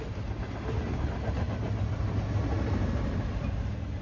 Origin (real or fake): real